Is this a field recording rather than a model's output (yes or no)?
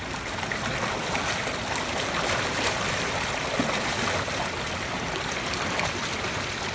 yes